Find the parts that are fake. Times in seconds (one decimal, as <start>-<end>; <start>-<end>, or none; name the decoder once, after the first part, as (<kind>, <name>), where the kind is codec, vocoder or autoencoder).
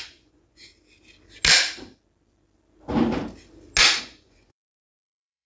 0.0-0.7 (vocoder, Vocos); 4.0-5.5